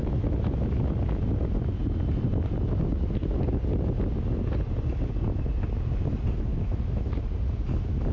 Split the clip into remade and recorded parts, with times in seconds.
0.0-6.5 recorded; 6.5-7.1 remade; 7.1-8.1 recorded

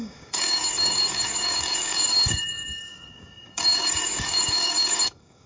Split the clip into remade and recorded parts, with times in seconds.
0.0-5.5 remade

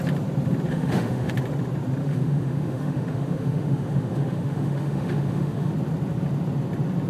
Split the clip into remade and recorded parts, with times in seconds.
0.0-0.7 recorded; 0.7-1.3 remade; 1.3-2.0 recorded; 2.0-5.7 remade; 5.7-7.1 recorded

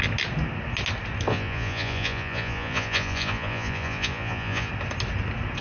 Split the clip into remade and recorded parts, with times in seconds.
0.0-1.3 recorded; 1.3-4.7 remade; 4.7-5.6 recorded

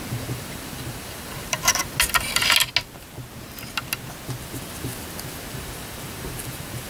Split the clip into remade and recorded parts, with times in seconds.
0.0-1.8 remade; 1.8-4.4 recorded; 4.4-4.9 remade; 4.9-5.5 recorded; 5.5-6.9 remade

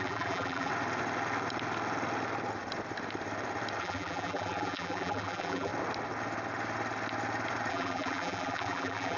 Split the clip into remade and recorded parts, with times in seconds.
0.0-0.7 remade; 0.7-3.8 recorded; 3.8-5.7 remade; 5.7-7.7 recorded; 7.7-9.2 remade